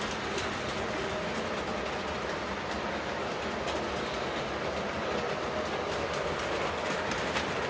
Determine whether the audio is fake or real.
real